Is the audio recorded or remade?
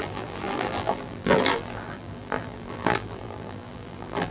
remade